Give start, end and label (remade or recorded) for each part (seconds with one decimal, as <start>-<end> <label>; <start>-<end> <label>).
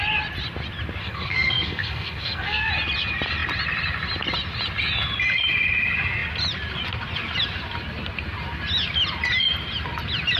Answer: 0.0-1.0 recorded; 1.0-2.7 remade; 2.7-10.4 recorded